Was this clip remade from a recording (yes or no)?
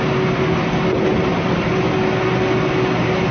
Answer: no